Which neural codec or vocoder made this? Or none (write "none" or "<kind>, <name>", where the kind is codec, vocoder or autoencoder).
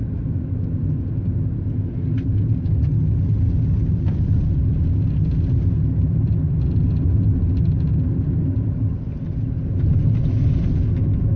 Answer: none